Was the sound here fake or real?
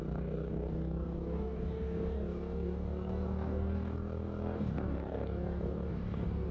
fake